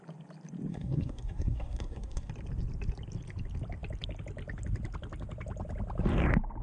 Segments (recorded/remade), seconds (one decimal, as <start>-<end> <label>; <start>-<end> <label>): 0.0-0.7 recorded; 0.7-2.3 remade; 2.3-6.6 recorded